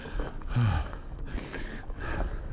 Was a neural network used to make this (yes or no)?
yes